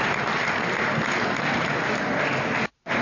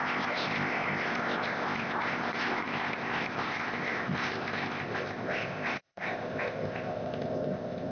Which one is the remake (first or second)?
second